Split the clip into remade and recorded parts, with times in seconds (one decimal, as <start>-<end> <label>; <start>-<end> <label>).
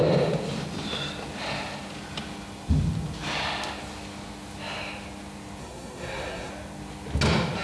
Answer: 0.0-5.6 recorded; 5.6-6.5 remade; 6.5-7.6 recorded